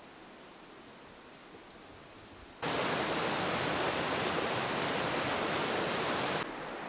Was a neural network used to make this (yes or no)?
no